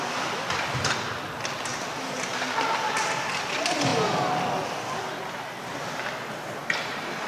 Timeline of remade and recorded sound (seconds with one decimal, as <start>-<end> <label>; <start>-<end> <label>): 0.0-1.7 recorded; 1.7-2.3 remade; 2.3-6.6 recorded; 6.6-7.3 remade